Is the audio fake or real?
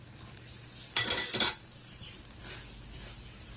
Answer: real